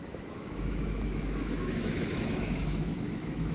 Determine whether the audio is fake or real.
fake